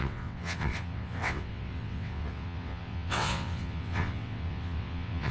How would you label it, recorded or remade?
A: remade